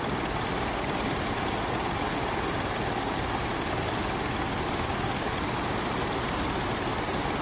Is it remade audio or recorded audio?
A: recorded